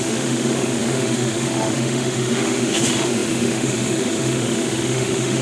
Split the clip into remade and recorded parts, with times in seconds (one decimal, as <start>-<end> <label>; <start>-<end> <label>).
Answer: 0.0-5.4 remade

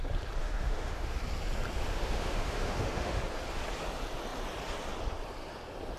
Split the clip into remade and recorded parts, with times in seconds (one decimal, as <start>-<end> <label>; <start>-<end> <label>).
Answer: 0.0-0.4 recorded; 0.4-1.2 remade; 1.2-1.9 recorded; 1.9-3.2 remade; 3.2-6.0 recorded

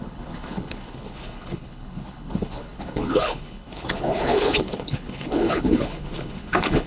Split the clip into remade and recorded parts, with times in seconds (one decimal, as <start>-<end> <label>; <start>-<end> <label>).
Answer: 0.0-6.9 remade

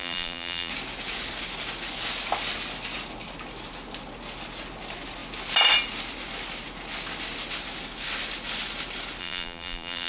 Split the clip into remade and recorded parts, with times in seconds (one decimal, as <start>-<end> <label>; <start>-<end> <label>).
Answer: 0.0-0.7 remade; 0.7-9.2 recorded; 9.2-10.1 remade